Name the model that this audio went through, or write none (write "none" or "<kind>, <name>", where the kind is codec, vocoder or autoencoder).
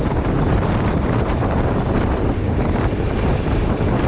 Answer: vocoder, BigVGAN v2